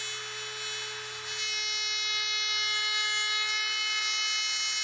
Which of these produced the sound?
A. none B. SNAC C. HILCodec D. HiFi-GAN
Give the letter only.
A